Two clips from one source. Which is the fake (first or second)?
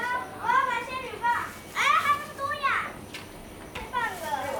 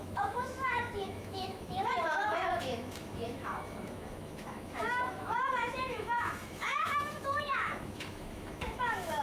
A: second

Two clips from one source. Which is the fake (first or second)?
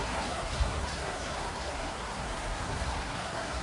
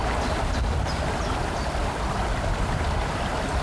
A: first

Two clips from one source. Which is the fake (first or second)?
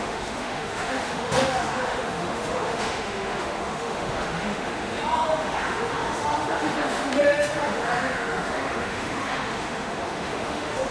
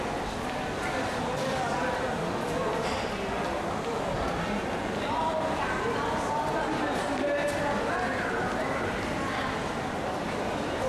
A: first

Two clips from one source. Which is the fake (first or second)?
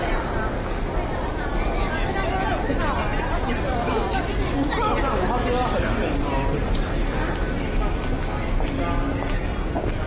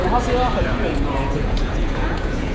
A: second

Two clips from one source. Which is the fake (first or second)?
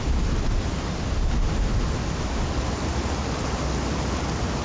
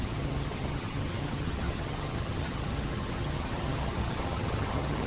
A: second